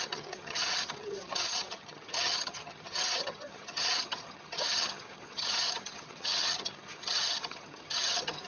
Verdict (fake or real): fake